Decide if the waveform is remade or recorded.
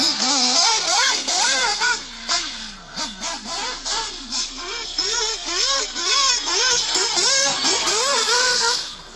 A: remade